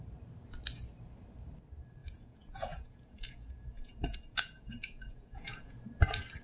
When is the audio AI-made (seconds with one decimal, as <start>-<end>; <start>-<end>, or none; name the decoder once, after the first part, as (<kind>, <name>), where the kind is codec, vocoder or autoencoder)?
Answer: 2.0-5.8 (vocoder, Vocos)